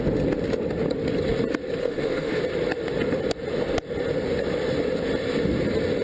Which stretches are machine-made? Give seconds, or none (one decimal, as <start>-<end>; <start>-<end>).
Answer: 1.8-2.4